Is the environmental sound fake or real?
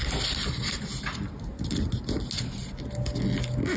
real